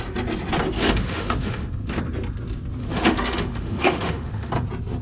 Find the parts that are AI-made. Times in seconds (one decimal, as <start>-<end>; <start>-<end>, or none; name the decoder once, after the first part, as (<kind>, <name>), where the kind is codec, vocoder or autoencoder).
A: 0.8-2.0 (autoencoder, DAC-VAE); 2.8-4.5